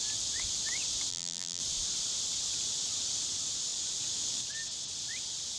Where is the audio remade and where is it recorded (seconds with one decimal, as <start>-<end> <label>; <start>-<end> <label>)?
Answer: 0.0-1.1 recorded; 1.1-1.6 remade; 1.6-5.6 recorded